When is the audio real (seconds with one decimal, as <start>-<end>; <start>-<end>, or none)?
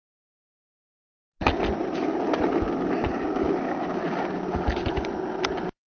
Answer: 1.2-3.7